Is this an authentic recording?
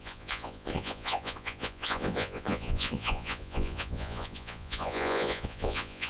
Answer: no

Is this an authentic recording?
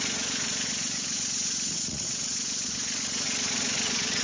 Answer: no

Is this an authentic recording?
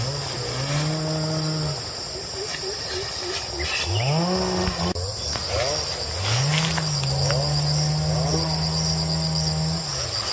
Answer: yes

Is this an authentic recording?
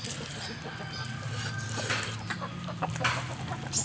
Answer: yes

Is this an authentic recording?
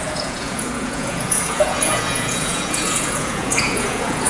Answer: no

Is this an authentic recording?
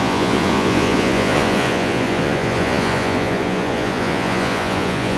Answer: no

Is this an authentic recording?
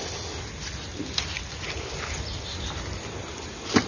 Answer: yes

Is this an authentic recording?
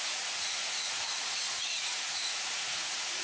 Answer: no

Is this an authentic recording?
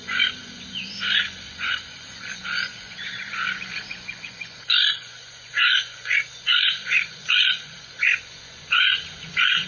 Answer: no